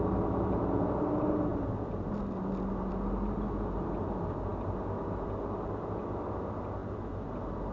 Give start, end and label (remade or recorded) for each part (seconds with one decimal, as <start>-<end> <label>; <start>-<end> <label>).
0.0-7.7 recorded